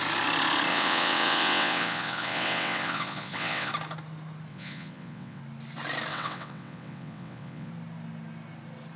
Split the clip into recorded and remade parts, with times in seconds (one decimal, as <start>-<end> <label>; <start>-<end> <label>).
0.0-0.7 recorded; 0.7-3.7 remade; 3.7-4.5 recorded; 4.5-5.4 remade; 5.4-6.1 recorded; 6.1-7.7 remade; 7.7-9.0 recorded